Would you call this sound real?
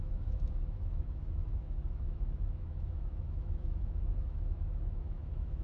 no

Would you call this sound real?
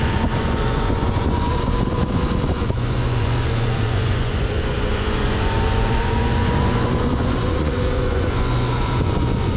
no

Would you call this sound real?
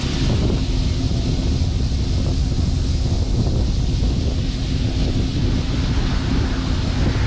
yes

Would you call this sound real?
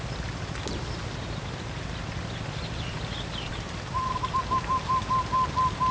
yes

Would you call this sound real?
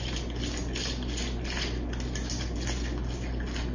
yes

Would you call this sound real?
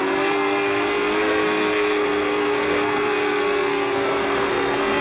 no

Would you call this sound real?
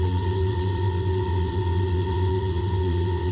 no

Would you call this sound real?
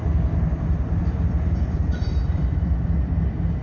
no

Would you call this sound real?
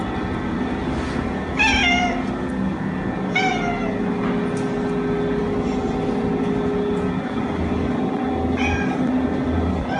yes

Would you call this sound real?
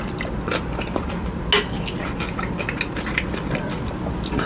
yes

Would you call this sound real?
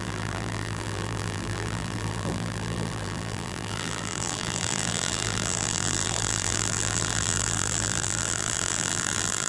no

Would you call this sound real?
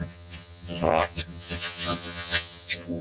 no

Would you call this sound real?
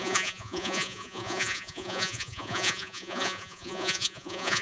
no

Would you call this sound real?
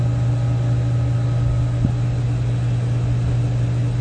yes